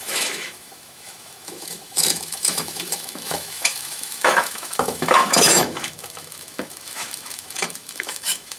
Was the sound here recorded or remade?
remade